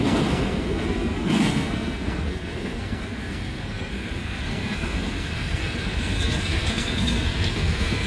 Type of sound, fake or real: fake